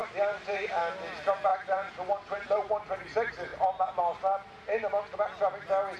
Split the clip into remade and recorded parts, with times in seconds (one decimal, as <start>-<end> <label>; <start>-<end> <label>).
0.0-0.8 remade; 0.8-1.5 recorded; 1.5-3.1 remade; 3.1-6.0 recorded